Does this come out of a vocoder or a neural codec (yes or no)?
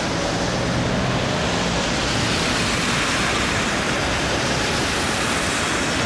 no